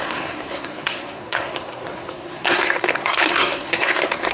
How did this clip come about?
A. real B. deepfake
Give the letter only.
B